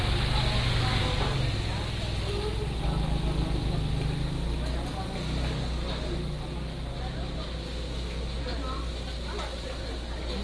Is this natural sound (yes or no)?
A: yes